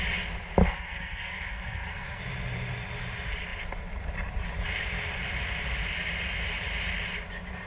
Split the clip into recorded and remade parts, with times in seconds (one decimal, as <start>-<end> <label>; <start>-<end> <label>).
0.0-0.6 recorded; 0.6-2.2 remade; 2.2-7.7 recorded

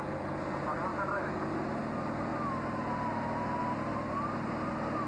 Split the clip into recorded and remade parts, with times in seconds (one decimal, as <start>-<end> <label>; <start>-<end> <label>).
0.0-5.1 recorded

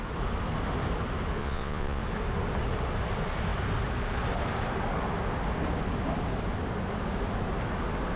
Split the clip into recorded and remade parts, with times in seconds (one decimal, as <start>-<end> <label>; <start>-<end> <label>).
0.0-1.4 recorded; 1.4-2.0 remade; 2.0-8.2 recorded